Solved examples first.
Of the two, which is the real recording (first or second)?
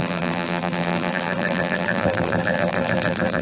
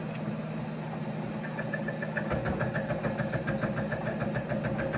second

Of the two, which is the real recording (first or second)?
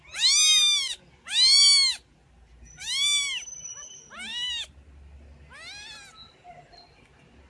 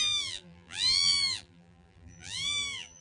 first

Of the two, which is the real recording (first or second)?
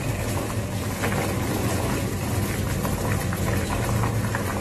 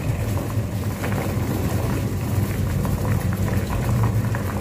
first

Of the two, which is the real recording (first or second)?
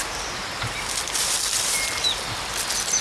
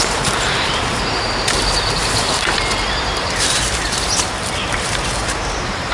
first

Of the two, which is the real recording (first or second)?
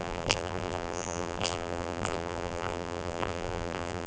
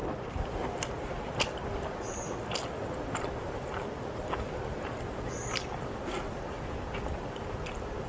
second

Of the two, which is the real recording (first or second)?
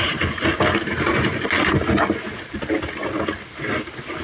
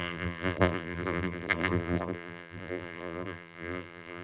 first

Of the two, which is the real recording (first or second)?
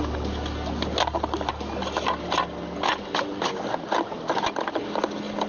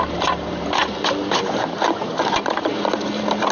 first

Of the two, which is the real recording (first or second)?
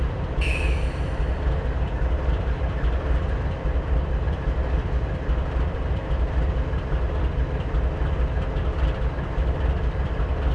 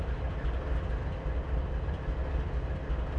second